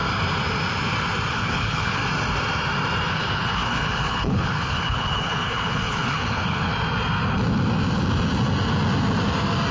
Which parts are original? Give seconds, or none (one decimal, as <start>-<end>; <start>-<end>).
0.0-1.3; 2.0-3.1; 6.7-9.7